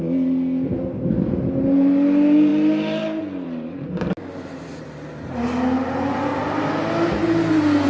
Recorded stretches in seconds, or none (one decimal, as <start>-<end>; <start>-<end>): 0.0-7.9